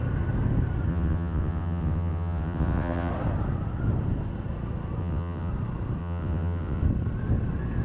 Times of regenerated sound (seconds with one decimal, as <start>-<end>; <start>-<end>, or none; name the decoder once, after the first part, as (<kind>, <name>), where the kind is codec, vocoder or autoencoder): 0.9-3.1 (vocoder, WaveNeXt); 5.0-5.5; 6.0-6.8